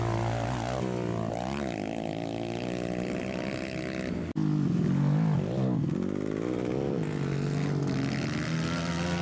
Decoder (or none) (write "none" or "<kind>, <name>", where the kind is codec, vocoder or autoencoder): none